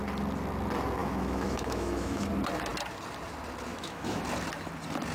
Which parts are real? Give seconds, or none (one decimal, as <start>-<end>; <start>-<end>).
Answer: 0.0-1.0; 2.3-3.7; 4.2-5.1